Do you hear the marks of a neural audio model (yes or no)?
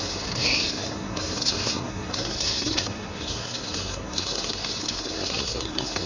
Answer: yes